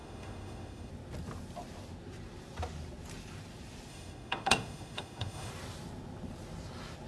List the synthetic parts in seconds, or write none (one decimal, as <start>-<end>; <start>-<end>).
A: 0.0-0.9; 3.9-5.5